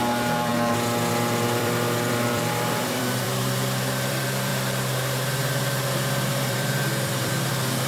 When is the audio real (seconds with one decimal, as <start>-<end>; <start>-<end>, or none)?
0.5-1.1; 4.5-6.3